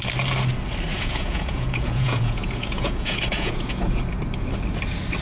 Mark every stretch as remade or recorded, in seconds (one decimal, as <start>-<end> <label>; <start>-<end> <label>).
0.0-0.9 recorded; 0.9-4.0 remade; 4.0-5.2 recorded